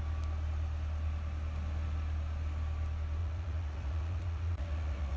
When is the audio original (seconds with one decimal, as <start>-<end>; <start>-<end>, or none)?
0.0-3.2